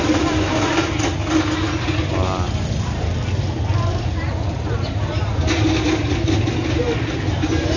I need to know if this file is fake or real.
real